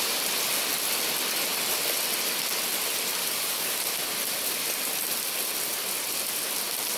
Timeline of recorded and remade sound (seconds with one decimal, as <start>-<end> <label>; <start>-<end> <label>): 0.0-3.2 recorded; 3.2-3.8 remade; 3.8-7.0 recorded